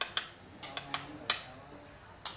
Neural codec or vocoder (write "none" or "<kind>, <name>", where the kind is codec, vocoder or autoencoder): none